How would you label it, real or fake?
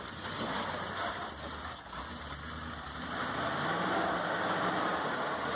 real